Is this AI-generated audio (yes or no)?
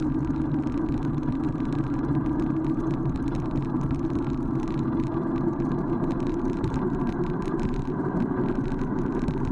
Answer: yes